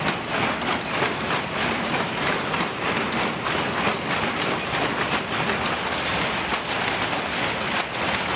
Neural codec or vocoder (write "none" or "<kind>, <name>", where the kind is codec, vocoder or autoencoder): none